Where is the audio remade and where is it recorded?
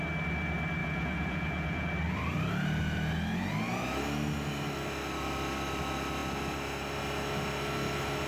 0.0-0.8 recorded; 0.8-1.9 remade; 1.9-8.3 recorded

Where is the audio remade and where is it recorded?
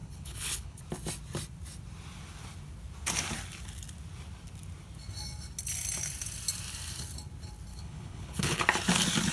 0.0-0.8 remade; 0.8-7.7 recorded; 7.7-8.6 remade; 8.6-9.3 recorded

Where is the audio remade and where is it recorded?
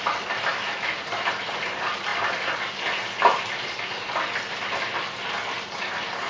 0.0-0.5 recorded; 0.5-1.0 remade; 1.0-6.3 recorded